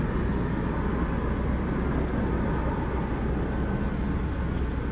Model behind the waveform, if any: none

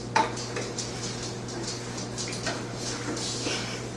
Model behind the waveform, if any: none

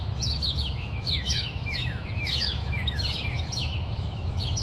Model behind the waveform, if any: autoencoder, DAC-VAE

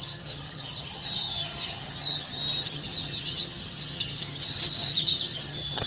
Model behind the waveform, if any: vocoder, HiFi-GAN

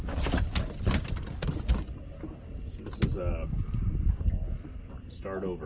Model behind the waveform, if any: none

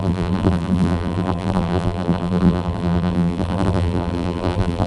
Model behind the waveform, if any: vocoder, BigVGAN v2